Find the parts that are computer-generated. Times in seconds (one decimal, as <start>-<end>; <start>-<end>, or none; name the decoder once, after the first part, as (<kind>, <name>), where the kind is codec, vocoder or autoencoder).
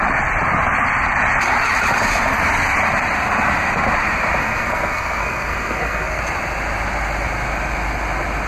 4.4-6.2 (codec, SNAC)